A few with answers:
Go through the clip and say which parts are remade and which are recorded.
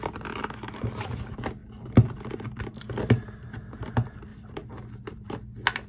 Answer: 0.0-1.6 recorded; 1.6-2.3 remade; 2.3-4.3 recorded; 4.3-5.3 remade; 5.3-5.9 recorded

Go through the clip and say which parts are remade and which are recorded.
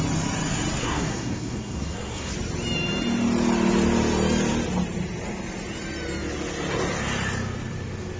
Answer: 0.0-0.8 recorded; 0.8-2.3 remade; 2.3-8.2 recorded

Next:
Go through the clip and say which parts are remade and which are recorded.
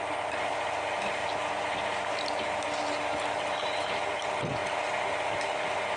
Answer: 0.0-6.0 recorded